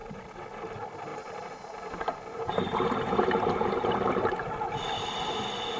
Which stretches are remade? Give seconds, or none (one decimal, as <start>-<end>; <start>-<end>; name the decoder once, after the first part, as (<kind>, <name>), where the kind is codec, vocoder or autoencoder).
0.0-0.6 (vocoder, BigVGAN v2); 1.1-4.5

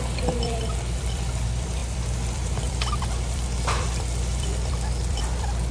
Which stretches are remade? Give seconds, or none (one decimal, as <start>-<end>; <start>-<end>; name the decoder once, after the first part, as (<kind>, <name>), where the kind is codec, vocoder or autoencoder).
0.0-5.7 (vocoder, BigVGAN v2)

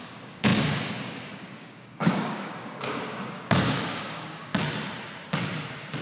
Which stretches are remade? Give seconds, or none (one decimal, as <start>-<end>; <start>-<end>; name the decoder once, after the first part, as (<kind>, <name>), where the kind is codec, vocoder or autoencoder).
0.0-4.5 (codec, DAC)

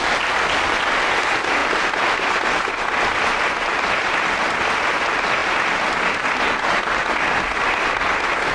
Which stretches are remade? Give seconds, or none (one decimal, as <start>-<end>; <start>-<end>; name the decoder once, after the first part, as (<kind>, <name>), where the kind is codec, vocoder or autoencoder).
none